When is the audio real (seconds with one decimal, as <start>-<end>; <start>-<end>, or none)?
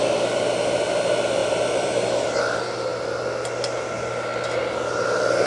0.0-5.5